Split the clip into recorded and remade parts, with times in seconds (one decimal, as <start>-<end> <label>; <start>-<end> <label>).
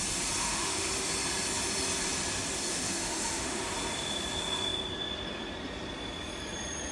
0.0-0.4 recorded; 0.4-0.9 remade; 0.9-2.7 recorded; 2.7-3.6 remade; 3.6-6.9 recorded